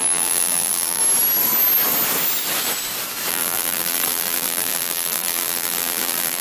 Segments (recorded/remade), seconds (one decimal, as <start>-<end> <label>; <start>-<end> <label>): 0.0-1.0 remade; 1.0-3.3 recorded; 3.3-6.4 remade